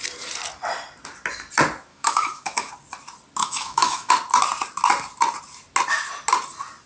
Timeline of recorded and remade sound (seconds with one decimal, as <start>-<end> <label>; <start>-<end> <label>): 0.0-1.9 recorded; 1.9-2.7 remade; 2.7-3.4 recorded; 3.4-4.1 remade; 4.1-6.9 recorded